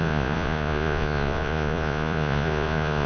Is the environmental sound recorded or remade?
remade